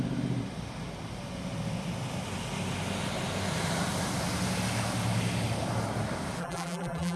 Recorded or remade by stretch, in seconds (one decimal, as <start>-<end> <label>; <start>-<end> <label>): 0.0-6.4 recorded; 6.4-7.2 remade